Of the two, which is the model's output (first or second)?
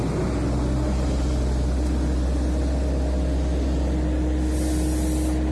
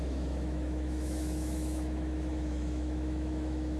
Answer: second